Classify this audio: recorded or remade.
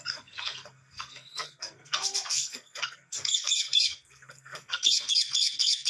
remade